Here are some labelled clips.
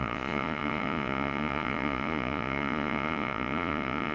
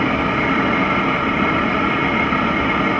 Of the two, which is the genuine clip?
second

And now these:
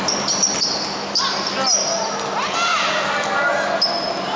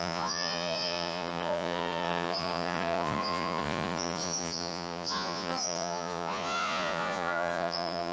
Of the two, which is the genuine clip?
first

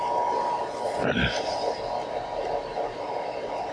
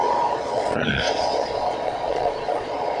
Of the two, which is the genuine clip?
first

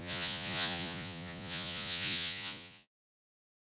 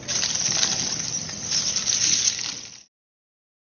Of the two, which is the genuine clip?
second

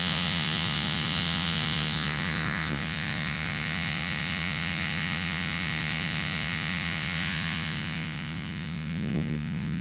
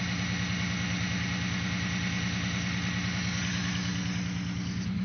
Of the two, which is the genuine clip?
second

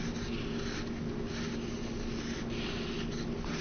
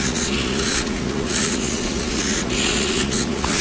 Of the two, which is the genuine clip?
first